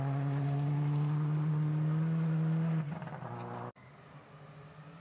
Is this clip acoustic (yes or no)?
yes